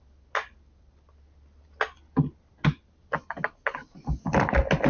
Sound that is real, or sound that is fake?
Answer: real